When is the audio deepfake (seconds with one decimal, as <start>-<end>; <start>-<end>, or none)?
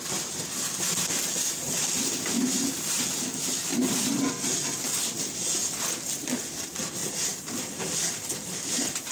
none